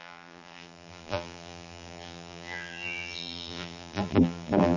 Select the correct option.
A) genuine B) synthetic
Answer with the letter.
B